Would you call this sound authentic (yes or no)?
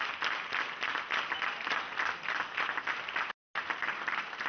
yes